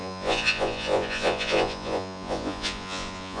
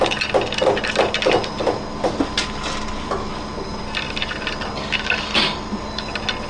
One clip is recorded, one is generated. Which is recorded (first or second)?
second